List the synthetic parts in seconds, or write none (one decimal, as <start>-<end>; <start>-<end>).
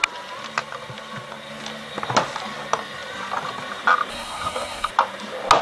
4.1-4.9